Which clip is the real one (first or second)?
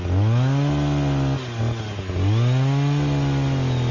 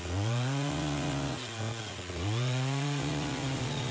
first